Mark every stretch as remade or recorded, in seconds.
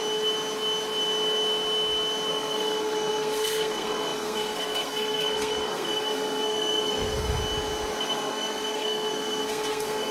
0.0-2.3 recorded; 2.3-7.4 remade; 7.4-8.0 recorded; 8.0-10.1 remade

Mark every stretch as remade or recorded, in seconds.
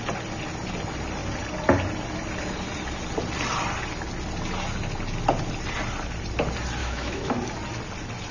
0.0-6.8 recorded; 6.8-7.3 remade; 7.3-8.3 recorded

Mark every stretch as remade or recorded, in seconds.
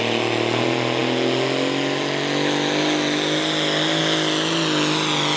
0.0-5.4 recorded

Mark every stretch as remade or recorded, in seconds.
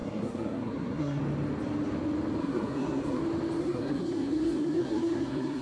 0.0-1.2 remade; 1.2-2.4 recorded; 2.4-3.2 remade; 3.2-3.6 recorded; 3.6-5.6 remade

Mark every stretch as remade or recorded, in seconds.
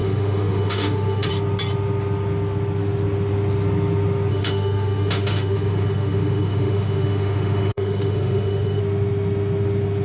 0.0-1.3 remade; 1.3-4.3 recorded; 4.3-8.8 remade; 8.8-10.0 recorded